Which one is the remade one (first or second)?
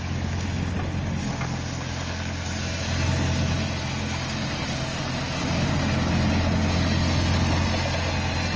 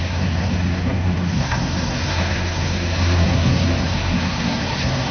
second